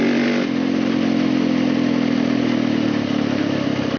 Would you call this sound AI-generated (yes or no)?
no